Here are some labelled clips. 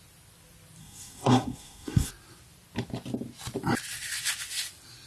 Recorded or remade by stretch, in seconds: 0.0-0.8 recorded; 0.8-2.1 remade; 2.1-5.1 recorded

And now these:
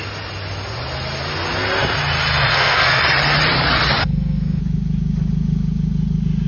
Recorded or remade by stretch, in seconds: 0.0-2.5 recorded; 2.5-3.0 remade; 3.0-4.0 recorded; 4.0-4.6 remade; 4.6-6.5 recorded

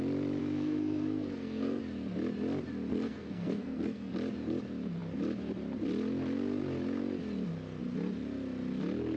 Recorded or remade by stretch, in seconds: 0.0-0.4 recorded; 0.4-1.8 remade; 1.8-2.9 recorded; 2.9-4.1 remade; 4.1-9.2 recorded

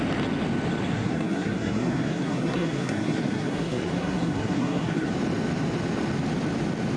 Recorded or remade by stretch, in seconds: 0.0-0.9 recorded; 0.9-5.1 remade; 5.1-7.0 recorded

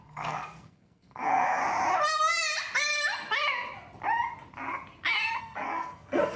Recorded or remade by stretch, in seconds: 0.0-1.6 remade; 1.6-5.4 recorded; 5.4-6.4 remade

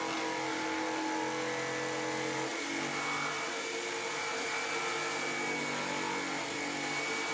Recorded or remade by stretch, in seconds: 0.0-7.3 recorded